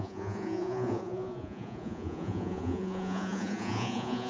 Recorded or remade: remade